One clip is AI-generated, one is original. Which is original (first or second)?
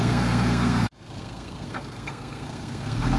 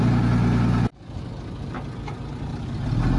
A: second